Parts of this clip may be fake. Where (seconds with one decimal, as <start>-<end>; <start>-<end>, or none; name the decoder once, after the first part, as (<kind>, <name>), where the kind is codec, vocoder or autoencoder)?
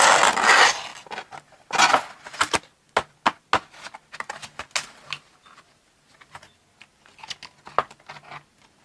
none